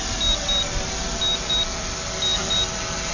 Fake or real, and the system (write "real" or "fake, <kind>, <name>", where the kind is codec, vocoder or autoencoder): real